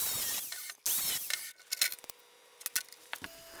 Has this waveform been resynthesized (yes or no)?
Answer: no